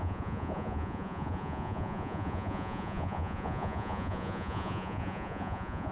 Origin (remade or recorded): remade